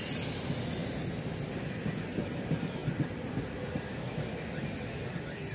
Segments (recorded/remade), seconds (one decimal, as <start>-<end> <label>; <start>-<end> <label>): 0.0-5.5 recorded